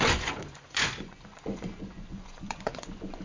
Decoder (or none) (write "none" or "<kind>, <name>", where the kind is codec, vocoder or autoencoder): vocoder, Vocos